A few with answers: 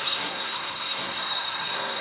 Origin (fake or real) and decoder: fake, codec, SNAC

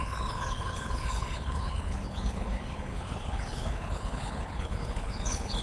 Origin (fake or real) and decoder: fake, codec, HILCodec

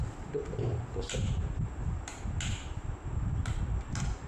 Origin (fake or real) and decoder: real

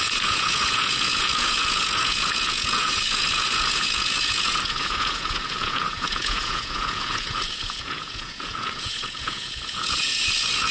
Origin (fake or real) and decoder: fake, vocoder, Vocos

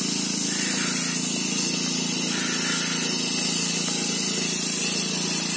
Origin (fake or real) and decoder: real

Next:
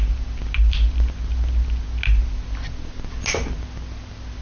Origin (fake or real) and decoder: real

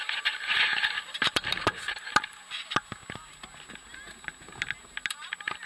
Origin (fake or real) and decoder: real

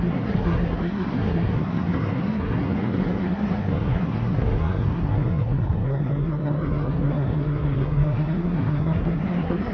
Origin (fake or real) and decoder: fake, codec, SNAC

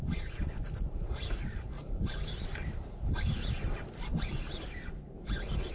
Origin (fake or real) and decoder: fake, vocoder, BigVGAN v2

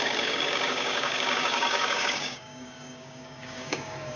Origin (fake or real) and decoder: fake, codec, DAC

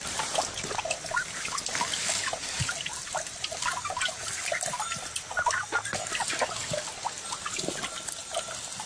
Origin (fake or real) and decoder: real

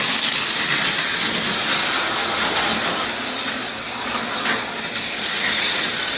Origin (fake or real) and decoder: real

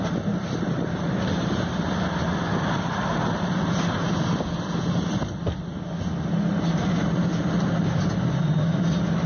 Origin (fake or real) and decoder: real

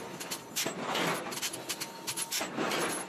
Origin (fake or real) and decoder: real